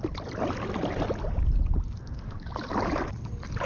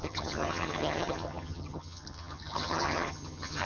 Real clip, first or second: first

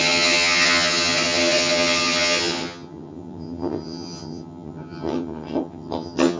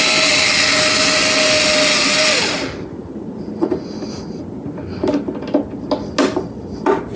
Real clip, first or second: second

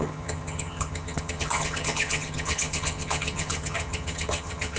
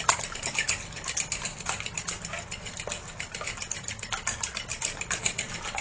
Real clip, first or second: second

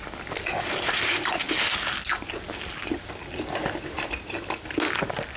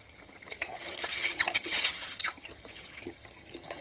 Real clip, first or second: first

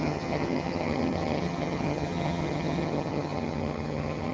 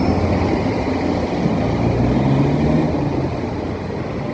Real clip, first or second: second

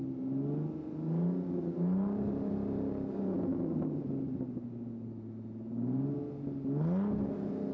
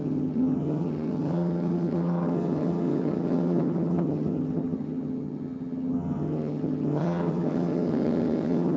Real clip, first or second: first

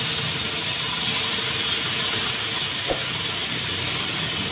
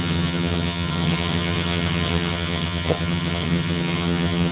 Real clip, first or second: first